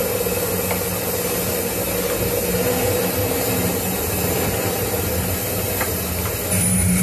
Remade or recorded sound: recorded